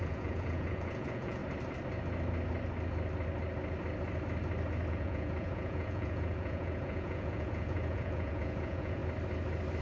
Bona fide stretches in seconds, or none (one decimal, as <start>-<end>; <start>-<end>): 1.4-4.9; 9.0-9.8